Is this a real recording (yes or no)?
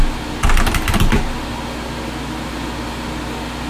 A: yes